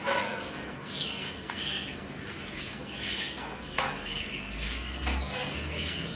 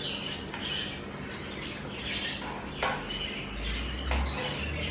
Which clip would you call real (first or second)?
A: second